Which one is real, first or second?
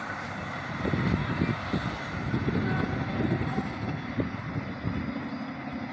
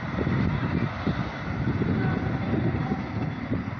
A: first